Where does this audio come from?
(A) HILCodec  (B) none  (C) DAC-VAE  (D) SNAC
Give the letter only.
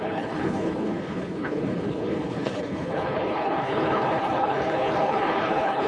A